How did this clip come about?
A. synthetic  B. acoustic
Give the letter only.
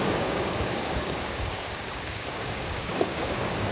A